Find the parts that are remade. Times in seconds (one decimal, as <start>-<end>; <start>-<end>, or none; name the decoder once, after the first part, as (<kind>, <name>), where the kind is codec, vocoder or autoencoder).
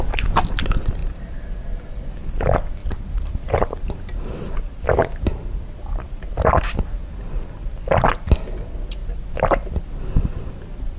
2.8-6.5 (vocoder, BigVGAN v2)